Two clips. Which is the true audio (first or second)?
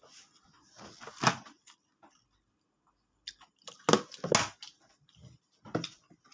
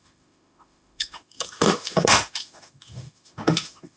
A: first